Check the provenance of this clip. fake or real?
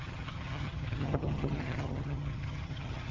fake